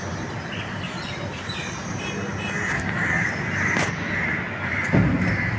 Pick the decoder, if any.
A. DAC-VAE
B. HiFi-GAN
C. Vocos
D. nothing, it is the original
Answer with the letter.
D